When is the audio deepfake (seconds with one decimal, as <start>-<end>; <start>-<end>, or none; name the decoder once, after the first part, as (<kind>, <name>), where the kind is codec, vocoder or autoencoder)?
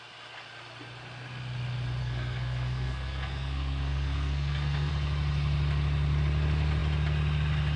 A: 2.0-4.9 (codec, SNAC)